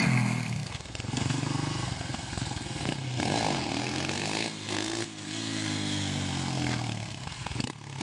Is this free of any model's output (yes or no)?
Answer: no